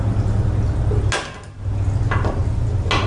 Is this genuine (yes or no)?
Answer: yes